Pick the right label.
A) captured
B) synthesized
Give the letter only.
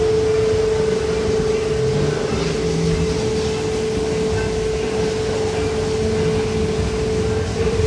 A